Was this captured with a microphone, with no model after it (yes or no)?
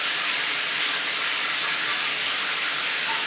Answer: no